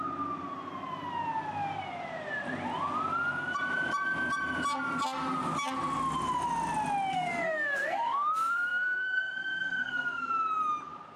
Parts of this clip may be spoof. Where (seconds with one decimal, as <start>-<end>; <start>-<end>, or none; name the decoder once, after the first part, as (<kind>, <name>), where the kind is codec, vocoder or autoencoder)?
7.1-10.3 (codec, SNAC)